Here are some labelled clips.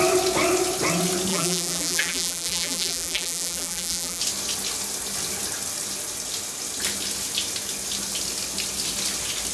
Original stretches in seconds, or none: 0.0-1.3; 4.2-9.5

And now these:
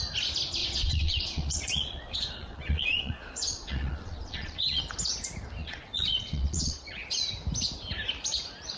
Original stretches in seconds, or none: 0.0-0.6; 4.8-5.6; 7.3-8.8

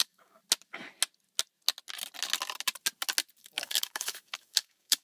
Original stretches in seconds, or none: 0.4-3.4